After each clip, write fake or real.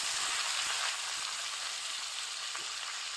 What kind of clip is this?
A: real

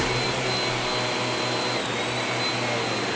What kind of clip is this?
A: real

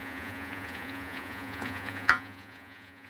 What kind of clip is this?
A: fake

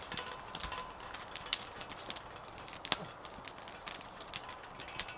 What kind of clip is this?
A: real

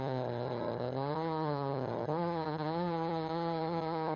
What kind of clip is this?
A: fake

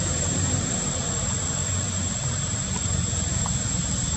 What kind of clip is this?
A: fake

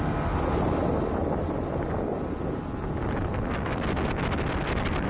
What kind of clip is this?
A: real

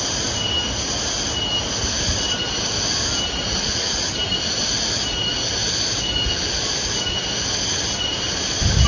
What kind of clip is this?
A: real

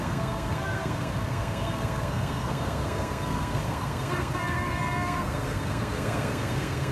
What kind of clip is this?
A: fake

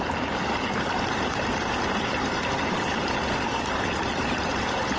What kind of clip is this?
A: real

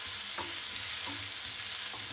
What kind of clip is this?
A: real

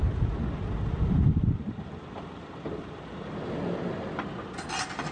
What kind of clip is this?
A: real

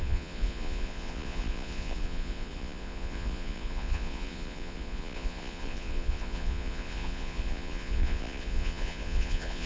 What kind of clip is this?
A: fake